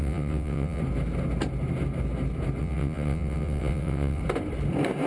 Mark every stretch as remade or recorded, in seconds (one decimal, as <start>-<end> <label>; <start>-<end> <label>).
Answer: 0.0-0.8 remade; 0.8-2.6 recorded; 2.6-4.2 remade; 4.2-5.1 recorded